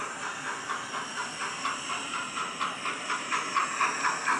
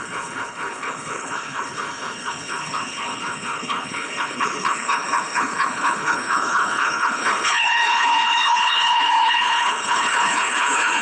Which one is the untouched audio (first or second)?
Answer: first